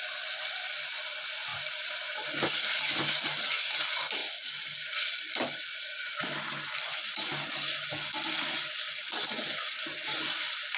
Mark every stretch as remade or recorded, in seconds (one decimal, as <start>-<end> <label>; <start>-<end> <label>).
0.0-1.5 recorded; 1.5-2.3 remade; 2.3-10.8 recorded